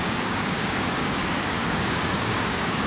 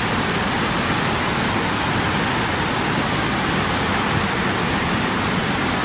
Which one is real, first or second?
second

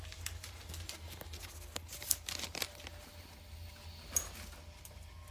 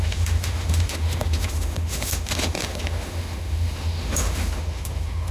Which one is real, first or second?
first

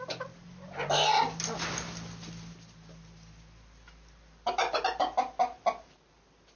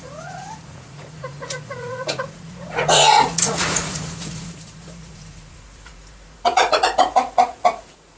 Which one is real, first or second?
first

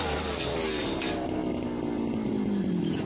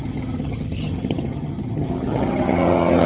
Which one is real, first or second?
first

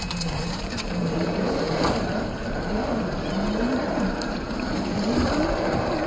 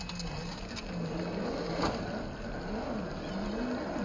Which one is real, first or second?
second